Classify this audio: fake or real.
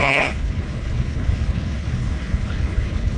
fake